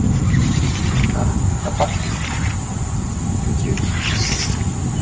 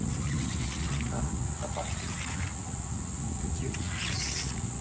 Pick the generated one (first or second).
second